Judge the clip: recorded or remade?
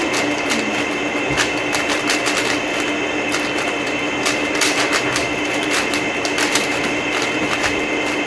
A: recorded